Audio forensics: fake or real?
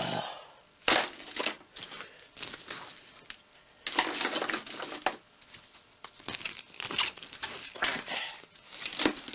real